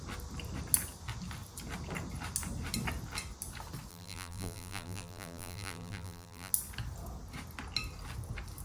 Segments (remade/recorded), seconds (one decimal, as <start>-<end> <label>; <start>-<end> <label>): 0.0-3.9 recorded; 3.9-6.5 remade; 6.5-8.6 recorded